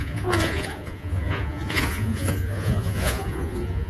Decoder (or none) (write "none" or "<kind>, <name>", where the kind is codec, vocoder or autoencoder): vocoder, Vocos